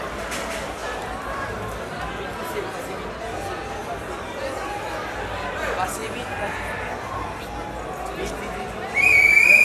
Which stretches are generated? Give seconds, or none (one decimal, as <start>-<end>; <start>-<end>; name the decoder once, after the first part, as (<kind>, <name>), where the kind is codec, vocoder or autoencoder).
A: 0.8-1.5 (vocoder, BigVGAN v2); 3.8-4.4; 6.0-6.5